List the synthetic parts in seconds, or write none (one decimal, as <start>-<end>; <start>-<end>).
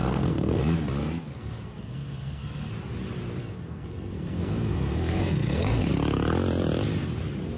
0.0-0.6; 1.4-2.7; 3.4-5.9